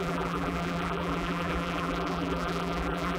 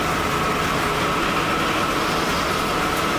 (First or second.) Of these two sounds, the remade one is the first